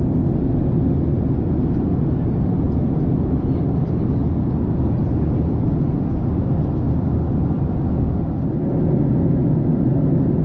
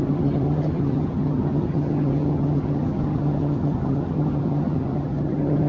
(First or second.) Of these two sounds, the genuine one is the first